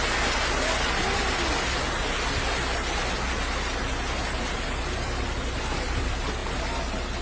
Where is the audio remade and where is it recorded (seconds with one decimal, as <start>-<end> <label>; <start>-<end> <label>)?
0.0-7.2 recorded